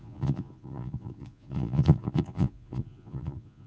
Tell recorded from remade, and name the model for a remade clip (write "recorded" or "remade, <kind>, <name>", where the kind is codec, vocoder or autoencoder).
remade, vocoder, Vocos